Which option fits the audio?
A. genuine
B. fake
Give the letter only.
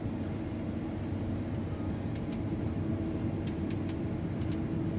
A